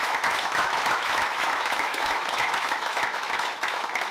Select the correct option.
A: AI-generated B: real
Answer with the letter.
A